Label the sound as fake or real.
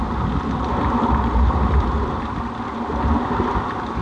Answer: real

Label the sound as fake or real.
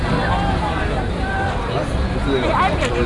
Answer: real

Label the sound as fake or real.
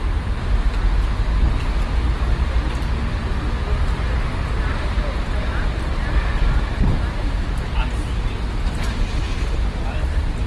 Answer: real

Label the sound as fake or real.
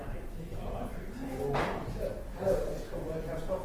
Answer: real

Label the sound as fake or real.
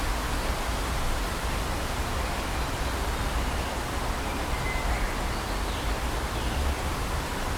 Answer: real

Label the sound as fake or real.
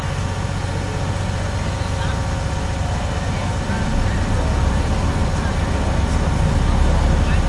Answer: real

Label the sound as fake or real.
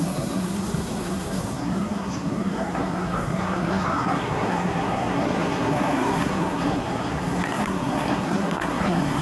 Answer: fake